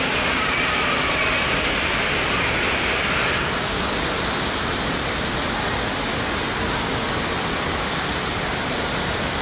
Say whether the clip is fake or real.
real